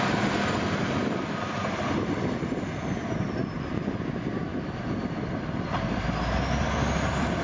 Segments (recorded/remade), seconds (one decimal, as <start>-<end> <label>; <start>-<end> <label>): 0.0-1.0 recorded; 1.0-1.9 remade; 1.9-7.4 recorded